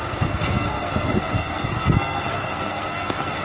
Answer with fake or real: fake